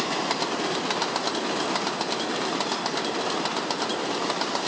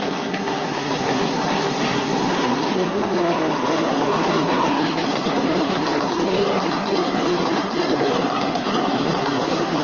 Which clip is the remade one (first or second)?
second